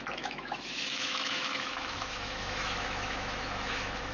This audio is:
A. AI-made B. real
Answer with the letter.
A